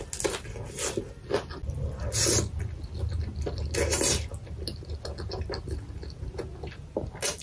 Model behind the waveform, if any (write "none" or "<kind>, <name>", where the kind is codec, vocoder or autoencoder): none